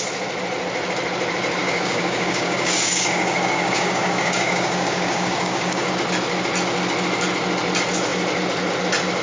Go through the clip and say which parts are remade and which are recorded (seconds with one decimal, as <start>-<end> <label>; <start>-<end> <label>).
0.0-1.6 recorded; 1.6-5.9 remade; 5.9-9.2 recorded